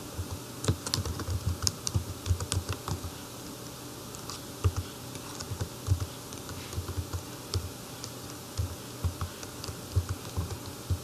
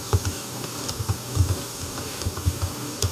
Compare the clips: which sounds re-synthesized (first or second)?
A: second